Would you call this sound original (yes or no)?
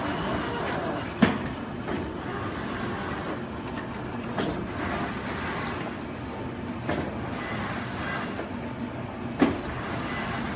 yes